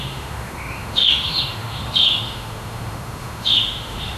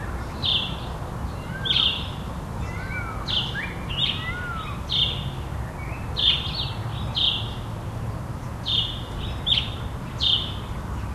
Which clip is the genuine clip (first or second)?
second